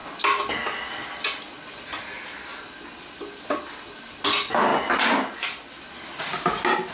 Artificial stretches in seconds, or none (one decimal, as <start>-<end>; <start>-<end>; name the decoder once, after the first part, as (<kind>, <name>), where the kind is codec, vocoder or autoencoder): none